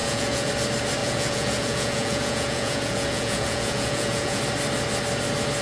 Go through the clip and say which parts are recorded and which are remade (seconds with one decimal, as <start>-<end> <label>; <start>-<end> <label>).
0.0-0.5 remade; 0.5-1.0 recorded; 1.0-4.4 remade; 4.4-5.6 recorded